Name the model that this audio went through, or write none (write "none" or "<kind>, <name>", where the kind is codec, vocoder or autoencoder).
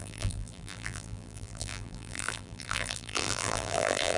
vocoder, BigVGAN v2